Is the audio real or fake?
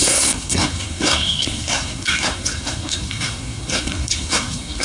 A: fake